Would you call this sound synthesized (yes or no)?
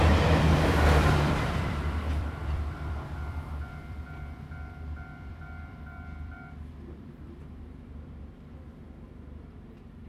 yes